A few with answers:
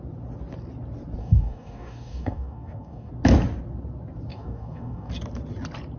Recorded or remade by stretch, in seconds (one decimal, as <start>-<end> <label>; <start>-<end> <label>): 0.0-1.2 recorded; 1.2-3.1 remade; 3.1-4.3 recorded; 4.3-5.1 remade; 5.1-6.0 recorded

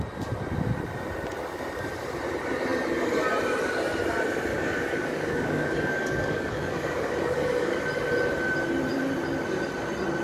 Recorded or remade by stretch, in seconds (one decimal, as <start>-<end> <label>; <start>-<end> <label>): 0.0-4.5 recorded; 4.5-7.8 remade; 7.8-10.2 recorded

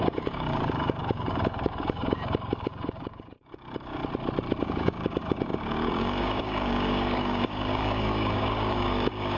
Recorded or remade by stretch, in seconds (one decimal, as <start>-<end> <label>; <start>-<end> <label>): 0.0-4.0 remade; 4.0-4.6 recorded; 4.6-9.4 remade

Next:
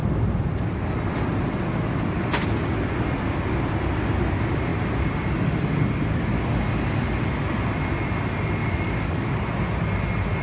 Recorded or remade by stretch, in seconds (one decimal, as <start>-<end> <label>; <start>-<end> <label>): 0.0-8.6 recorded; 8.6-9.4 remade; 9.4-10.4 recorded

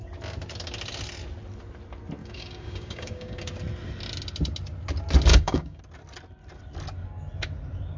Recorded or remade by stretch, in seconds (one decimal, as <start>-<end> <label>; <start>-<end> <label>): 0.0-2.2 recorded; 2.2-3.5 remade; 3.5-5.3 recorded; 5.3-5.8 remade; 5.8-8.0 recorded

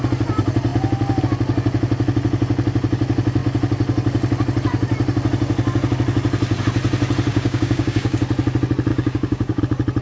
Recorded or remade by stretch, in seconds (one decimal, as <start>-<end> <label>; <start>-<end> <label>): 0.0-7.3 recorded; 7.3-8.2 remade; 8.2-8.9 recorded; 8.9-9.6 remade; 9.6-10.0 recorded

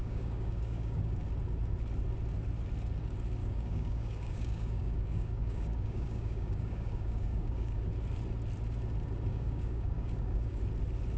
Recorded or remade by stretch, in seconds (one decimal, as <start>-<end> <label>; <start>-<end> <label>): 0.0-1.2 remade; 1.2-3.4 recorded; 3.4-7.8 remade; 7.8-9.3 recorded; 9.3-10.6 remade; 10.6-11.2 recorded